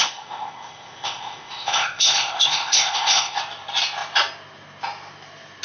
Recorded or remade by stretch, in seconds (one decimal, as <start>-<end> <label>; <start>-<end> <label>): 0.0-3.4 remade; 3.4-5.6 recorded